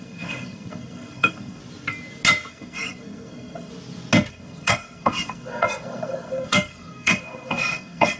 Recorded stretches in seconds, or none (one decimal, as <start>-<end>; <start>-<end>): 1.6-2.5; 3.7-4.3